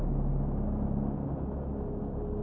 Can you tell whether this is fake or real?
real